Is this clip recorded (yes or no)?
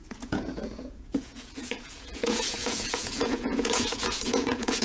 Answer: no